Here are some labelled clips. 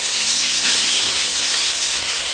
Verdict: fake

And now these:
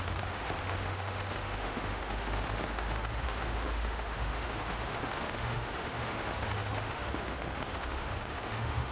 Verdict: fake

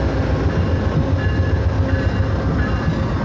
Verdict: real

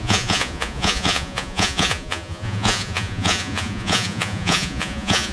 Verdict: fake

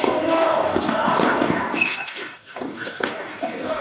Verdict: fake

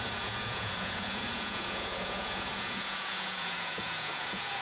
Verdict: fake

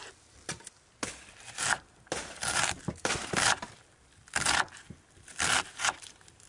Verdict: real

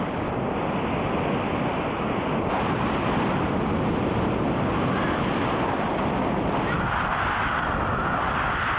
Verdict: real